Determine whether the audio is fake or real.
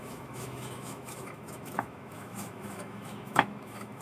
fake